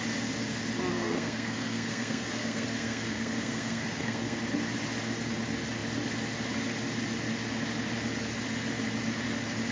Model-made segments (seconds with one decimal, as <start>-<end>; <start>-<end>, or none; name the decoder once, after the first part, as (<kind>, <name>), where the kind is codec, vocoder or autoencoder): 0.9-4.4 (codec, SNAC)